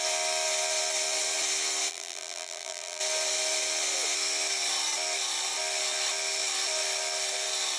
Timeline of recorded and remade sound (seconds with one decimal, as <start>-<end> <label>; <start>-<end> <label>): 0.0-1.9 recorded; 1.9-3.0 remade; 3.0-7.8 recorded